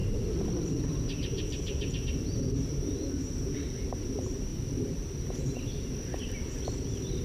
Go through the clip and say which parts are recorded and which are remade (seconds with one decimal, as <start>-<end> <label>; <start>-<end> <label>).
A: 0.0-1.2 recorded; 1.2-4.5 remade; 4.5-7.2 recorded